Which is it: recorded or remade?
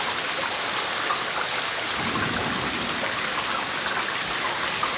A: recorded